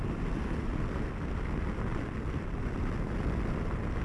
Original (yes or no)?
yes